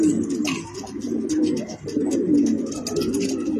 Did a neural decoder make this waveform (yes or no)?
no